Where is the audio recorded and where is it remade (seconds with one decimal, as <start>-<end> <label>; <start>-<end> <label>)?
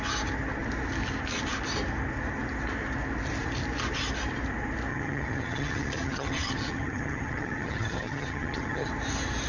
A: 0.0-4.9 recorded; 4.9-8.9 remade; 8.9-9.5 recorded